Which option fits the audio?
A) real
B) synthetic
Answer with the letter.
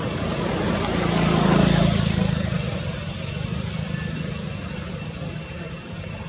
A